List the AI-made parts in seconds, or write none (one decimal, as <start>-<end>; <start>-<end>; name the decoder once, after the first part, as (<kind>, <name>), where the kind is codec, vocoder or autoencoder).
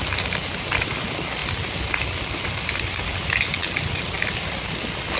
none